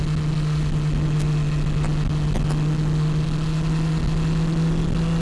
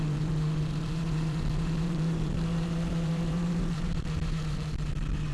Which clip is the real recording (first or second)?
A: first